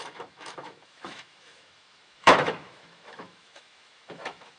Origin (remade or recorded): remade